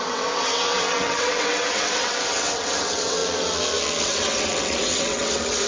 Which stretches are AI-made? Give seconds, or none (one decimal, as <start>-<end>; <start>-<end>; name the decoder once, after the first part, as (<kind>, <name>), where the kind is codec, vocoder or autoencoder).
0.0-3.2 (vocoder, WaveNeXt); 4.0-5.7